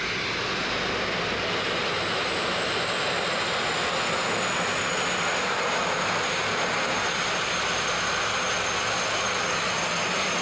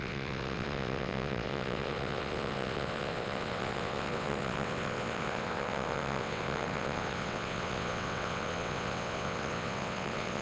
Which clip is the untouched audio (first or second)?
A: first